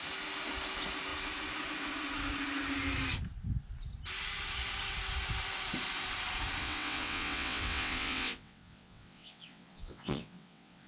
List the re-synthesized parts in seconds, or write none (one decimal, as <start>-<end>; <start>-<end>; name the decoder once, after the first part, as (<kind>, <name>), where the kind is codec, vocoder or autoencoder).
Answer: 6.6-10.9 (vocoder, WaveNeXt)